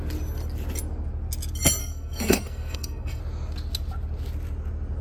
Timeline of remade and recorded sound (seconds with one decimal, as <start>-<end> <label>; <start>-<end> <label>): 0.0-1.8 recorded; 1.8-3.2 remade; 3.2-5.0 recorded